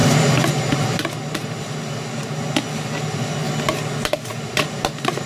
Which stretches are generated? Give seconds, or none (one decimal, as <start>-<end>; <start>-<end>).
0.0-1.6; 4.3-5.3